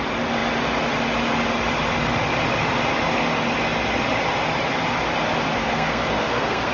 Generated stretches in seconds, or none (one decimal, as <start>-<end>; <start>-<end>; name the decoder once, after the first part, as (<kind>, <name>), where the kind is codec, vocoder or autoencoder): 5.6-6.7 (codec, SNAC)